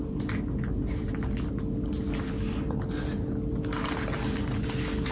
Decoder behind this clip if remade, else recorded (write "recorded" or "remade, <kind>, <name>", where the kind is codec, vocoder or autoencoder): recorded